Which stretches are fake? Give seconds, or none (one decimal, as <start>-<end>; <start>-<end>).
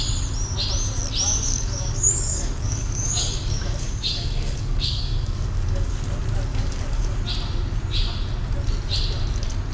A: 1.5-6.1; 6.5-7.2